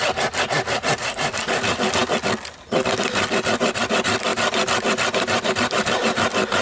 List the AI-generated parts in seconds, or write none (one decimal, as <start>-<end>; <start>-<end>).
none